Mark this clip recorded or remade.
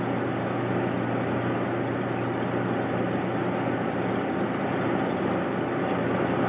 recorded